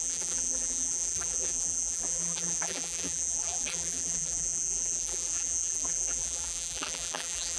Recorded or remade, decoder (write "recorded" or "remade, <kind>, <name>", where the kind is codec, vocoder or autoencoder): remade, vocoder, BigVGAN v2